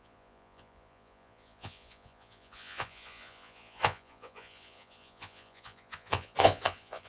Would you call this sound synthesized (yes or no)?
yes